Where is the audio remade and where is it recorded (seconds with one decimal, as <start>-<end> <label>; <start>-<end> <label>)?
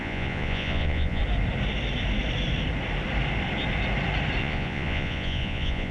0.0-1.2 remade; 1.2-4.4 recorded; 4.4-5.9 remade